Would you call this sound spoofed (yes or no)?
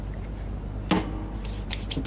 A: no